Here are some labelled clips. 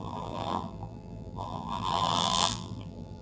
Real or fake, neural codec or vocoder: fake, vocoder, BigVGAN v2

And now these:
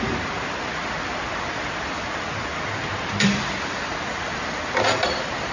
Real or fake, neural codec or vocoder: fake, vocoder, BigVGAN v2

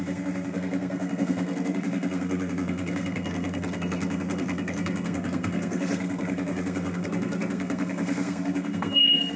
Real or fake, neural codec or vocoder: fake, codec, SNAC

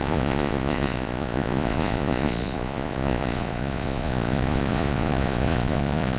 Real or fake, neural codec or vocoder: fake, vocoder, Vocos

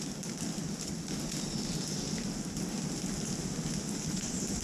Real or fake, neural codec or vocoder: real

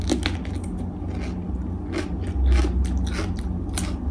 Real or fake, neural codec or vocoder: real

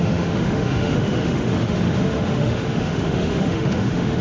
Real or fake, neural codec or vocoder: fake, autoencoder, DAC-VAE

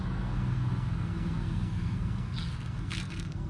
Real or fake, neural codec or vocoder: fake, codec, SNAC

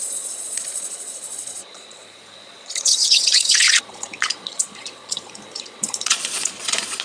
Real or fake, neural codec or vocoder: fake, vocoder, Vocos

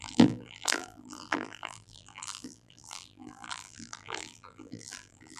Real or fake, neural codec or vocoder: fake, vocoder, BigVGAN v2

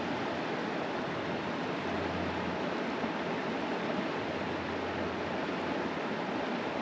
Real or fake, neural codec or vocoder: real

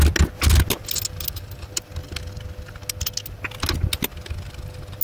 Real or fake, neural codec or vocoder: real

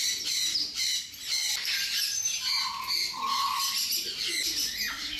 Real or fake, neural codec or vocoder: real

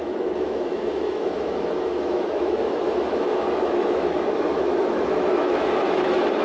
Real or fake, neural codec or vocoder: fake, autoencoder, DAC-VAE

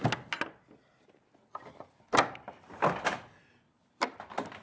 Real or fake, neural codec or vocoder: real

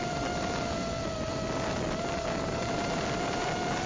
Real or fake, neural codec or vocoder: real